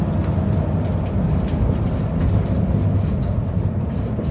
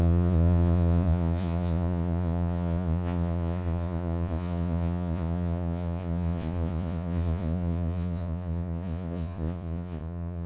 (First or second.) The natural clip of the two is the first